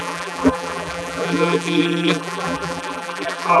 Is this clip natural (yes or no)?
no